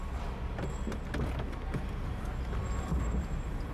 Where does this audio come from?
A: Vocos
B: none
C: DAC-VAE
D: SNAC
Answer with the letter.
B